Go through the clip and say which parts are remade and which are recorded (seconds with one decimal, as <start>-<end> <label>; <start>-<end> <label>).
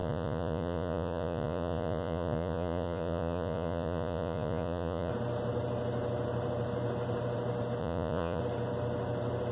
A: 0.0-5.1 remade; 5.1-7.8 recorded; 7.8-8.4 remade; 8.4-9.5 recorded